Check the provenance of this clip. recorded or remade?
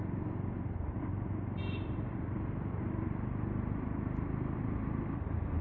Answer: remade